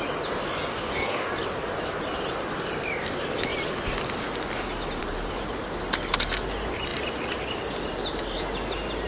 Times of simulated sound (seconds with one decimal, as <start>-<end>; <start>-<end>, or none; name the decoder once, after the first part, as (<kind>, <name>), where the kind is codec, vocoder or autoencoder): 0.7-1.3 (codec, DAC)